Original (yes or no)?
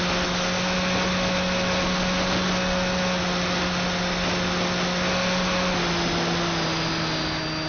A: yes